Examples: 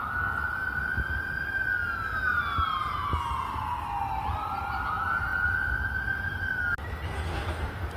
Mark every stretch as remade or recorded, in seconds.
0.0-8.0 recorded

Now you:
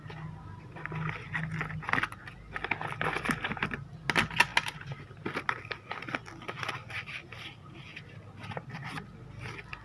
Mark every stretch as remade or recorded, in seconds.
0.0-9.8 recorded

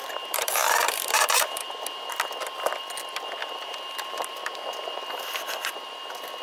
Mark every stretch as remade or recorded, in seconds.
0.0-1.8 remade; 1.8-3.4 recorded; 3.4-4.3 remade; 4.3-6.4 recorded

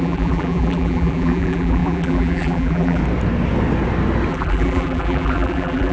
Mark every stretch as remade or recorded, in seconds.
0.0-3.0 remade; 3.0-4.3 recorded; 4.3-5.9 remade

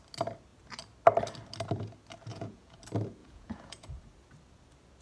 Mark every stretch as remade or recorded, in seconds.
0.0-2.3 recorded; 2.3-2.8 remade; 2.8-3.2 recorded; 3.2-4.0 remade; 4.0-5.0 recorded

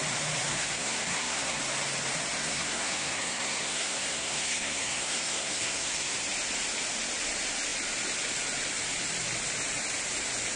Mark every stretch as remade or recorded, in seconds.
0.0-0.5 recorded; 0.5-1.6 remade; 1.6-2.4 recorded; 2.4-6.2 remade; 6.2-10.6 recorded